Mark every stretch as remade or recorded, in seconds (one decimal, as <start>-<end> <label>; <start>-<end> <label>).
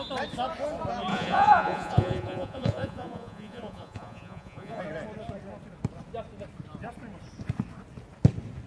0.0-1.1 recorded; 1.1-4.8 remade; 4.8-8.7 recorded